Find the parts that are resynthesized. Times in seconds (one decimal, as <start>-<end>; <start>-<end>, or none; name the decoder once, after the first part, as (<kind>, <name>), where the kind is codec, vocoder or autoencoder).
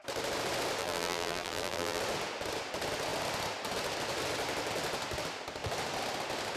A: 0.8-2.0 (vocoder, BigVGAN v2)